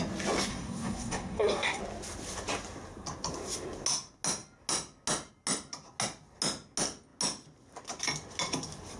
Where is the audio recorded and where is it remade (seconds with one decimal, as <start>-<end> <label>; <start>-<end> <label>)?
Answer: 0.0-0.5 recorded; 0.5-1.8 remade; 1.8-9.0 recorded